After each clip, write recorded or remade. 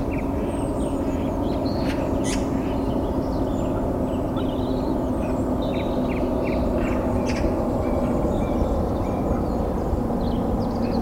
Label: recorded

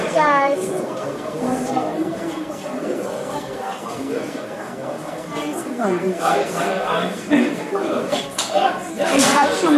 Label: remade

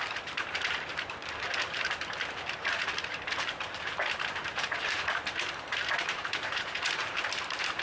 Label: remade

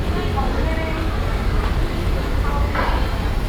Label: recorded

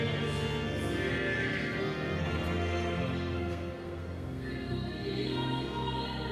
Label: remade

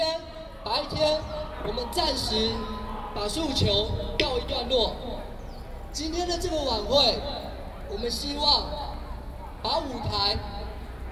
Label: recorded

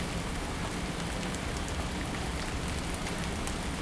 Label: recorded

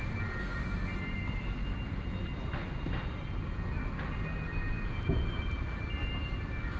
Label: recorded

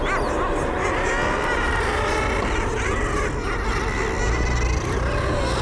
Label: recorded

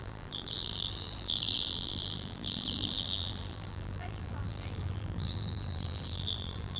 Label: remade